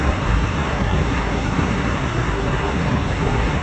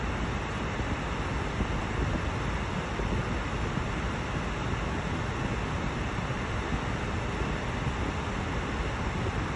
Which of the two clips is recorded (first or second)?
second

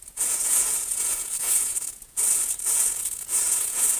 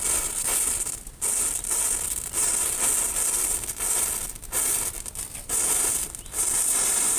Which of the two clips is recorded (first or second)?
second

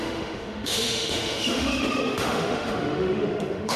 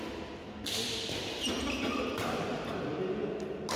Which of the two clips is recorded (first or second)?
second